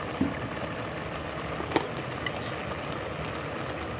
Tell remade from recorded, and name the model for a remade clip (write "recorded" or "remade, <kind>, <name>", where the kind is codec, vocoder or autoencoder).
recorded